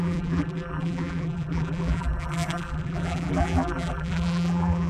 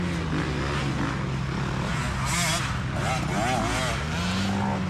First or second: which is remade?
first